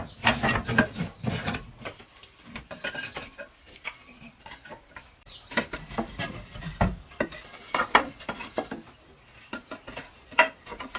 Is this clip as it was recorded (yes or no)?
no